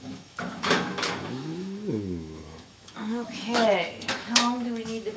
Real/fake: fake